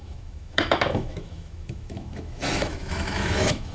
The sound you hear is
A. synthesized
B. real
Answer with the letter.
A